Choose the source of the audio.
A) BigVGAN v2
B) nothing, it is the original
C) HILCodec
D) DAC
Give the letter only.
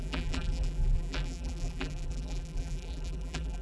A